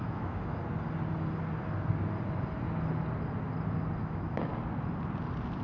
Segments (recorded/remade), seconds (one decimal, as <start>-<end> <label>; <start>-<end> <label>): 0.0-0.6 remade; 0.6-4.0 recorded; 4.0-4.5 remade; 4.5-5.6 recorded